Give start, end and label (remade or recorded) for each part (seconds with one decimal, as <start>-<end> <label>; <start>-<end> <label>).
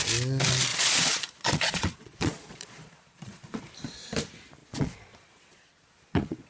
0.0-0.7 recorded; 0.7-3.6 remade; 3.6-4.6 recorded; 4.6-6.5 remade